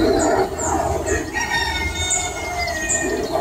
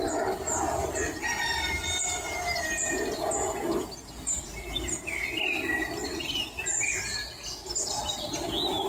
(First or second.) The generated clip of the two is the second